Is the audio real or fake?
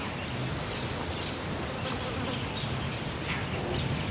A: real